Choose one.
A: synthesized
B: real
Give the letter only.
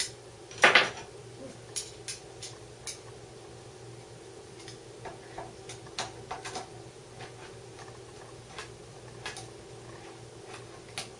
B